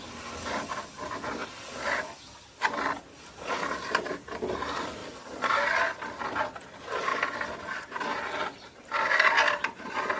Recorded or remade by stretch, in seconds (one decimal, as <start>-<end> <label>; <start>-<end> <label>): 0.0-5.0 recorded; 5.0-5.7 remade; 5.7-7.1 recorded; 7.1-8.2 remade; 8.2-10.2 recorded